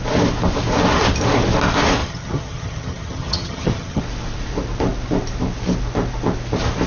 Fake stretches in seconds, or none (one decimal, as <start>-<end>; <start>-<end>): 2.0-4.0